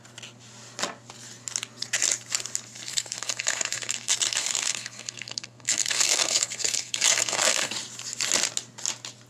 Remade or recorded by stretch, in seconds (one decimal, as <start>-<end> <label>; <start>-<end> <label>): 0.0-2.9 recorded; 2.9-7.7 remade; 7.7-9.3 recorded